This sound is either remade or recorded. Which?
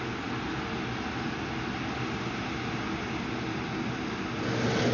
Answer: recorded